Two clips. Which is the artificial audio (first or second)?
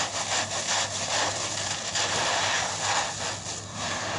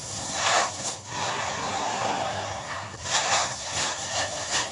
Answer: second